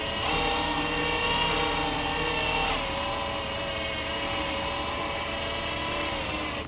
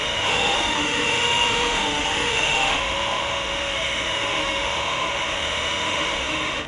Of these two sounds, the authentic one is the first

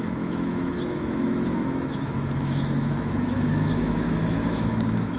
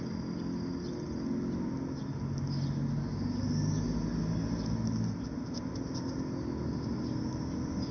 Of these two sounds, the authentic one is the second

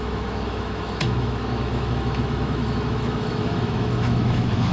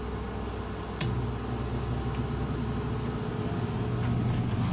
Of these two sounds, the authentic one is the second